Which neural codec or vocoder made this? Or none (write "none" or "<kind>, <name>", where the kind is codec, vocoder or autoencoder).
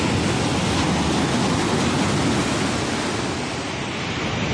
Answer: none